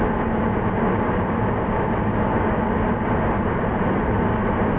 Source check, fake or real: real